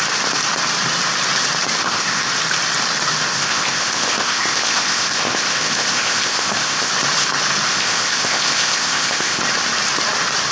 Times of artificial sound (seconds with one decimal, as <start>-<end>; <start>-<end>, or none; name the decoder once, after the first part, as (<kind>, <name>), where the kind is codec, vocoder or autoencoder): 1.8-2.3 (codec, ZipCodec); 3.3-6.9; 7.7-9.4

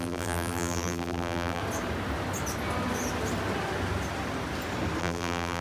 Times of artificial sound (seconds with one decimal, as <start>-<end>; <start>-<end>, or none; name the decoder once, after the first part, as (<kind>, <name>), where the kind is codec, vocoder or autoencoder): 0.0-1.6 (vocoder, BigVGAN v2); 5.0-5.6

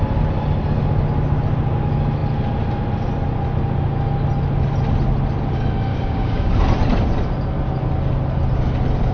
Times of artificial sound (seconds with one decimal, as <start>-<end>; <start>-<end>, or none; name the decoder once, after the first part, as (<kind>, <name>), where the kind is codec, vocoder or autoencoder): 5.9-6.5 (codec, DAC)

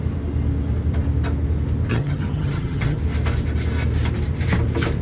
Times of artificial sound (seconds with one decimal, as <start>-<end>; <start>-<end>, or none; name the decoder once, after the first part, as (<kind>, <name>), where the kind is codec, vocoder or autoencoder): 1.9-3.0 (vocoder, HiFi-GAN)